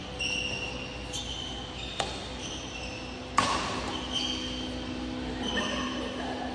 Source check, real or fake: real